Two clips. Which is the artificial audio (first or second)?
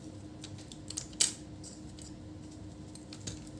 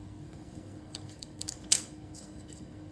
second